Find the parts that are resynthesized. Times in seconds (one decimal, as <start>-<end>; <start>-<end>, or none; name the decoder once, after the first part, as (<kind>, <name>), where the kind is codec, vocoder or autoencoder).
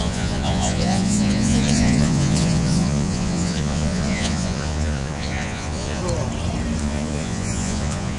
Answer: 0.0-6.0 (vocoder, Vocos); 6.8-8.2